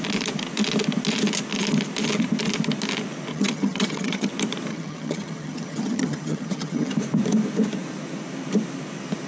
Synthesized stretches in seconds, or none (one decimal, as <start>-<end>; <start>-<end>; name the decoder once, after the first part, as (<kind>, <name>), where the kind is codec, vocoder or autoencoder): 3.3-4.3 (vocoder, HiFi-GAN); 4.7-6.9